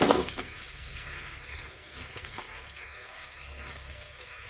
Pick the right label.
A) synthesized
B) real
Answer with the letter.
A